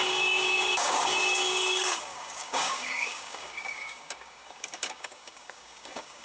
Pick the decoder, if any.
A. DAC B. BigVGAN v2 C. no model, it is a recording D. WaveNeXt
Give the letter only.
A